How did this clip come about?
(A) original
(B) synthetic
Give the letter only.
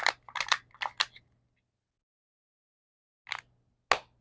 A